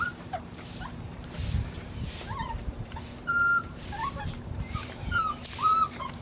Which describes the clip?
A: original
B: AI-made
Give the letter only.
B